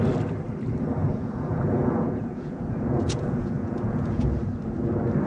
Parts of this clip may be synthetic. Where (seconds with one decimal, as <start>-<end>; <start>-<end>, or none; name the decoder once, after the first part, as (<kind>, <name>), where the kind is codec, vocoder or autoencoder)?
1.0-4.2 (vocoder, Vocos)

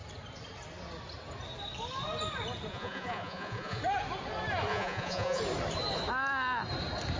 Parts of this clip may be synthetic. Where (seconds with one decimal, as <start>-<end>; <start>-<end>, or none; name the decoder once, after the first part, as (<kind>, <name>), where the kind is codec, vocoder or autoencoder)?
2.7-3.8 (vocoder, Vocos); 4.7-5.4

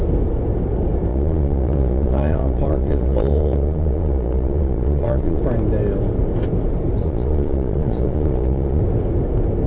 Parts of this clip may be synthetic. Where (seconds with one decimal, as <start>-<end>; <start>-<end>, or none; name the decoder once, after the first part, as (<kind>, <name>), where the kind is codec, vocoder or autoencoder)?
1.1-5.4 (vocoder, Vocos); 7.0-8.8

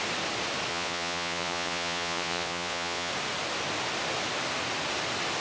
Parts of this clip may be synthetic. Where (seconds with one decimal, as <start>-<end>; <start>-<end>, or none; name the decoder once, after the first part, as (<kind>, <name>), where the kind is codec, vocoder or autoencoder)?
0.7-3.1 (vocoder, Vocos)

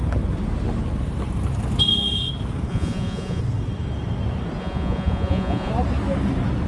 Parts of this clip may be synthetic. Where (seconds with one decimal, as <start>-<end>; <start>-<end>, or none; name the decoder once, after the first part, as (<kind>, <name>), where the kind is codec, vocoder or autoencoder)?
2.7-3.4 (vocoder, Vocos); 4.6-5.7